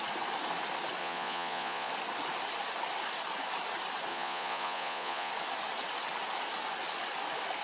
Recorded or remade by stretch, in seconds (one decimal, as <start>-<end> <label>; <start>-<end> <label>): 0.0-1.0 recorded; 1.0-1.9 remade; 1.9-4.1 recorded; 4.1-5.3 remade; 5.3-7.6 recorded